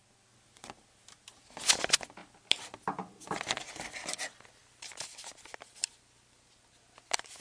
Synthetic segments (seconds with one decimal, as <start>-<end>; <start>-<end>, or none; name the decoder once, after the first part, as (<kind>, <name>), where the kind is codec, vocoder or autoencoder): none